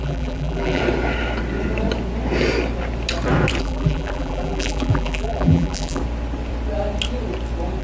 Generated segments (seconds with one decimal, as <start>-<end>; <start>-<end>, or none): 0.0-0.8; 3.6-6.0